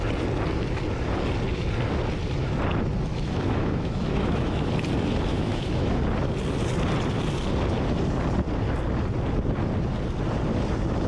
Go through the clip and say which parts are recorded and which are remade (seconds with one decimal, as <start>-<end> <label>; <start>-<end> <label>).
0.0-3.1 recorded; 3.1-4.7 remade; 4.7-5.3 recorded; 5.3-6.0 remade; 6.0-11.1 recorded